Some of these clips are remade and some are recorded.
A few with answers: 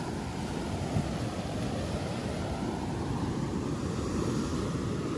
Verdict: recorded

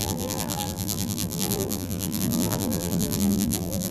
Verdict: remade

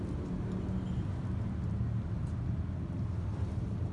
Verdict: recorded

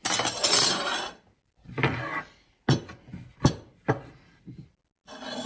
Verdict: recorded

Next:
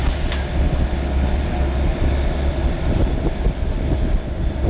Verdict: recorded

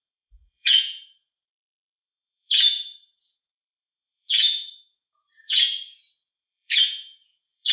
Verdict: remade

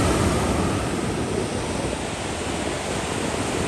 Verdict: recorded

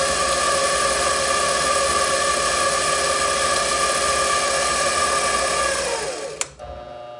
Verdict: recorded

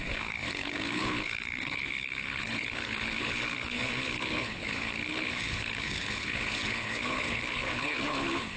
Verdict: remade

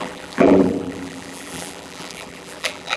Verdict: remade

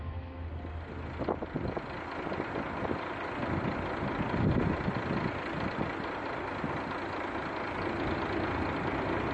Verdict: recorded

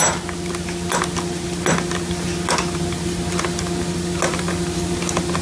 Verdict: recorded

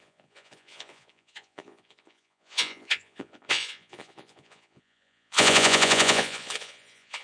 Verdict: remade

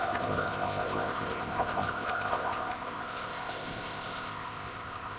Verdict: remade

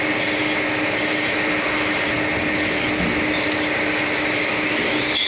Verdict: recorded